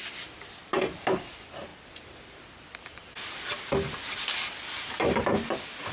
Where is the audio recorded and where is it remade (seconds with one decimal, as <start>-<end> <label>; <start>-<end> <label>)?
0.0-5.9 recorded